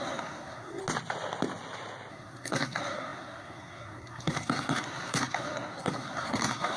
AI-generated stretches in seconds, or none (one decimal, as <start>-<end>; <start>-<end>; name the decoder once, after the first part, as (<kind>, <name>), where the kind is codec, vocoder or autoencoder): 0.0-0.8 (codec, SNAC); 2.1-6.8